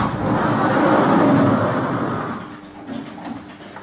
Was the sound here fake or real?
real